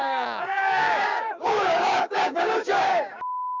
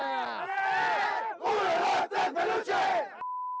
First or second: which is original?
second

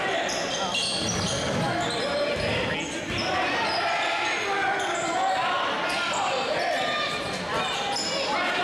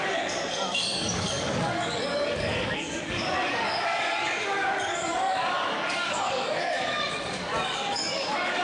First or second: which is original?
first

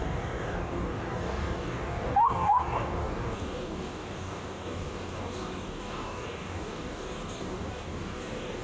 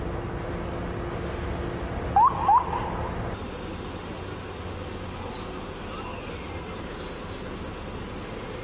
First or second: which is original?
second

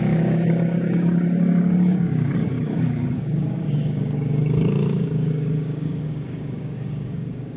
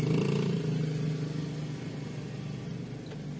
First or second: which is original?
second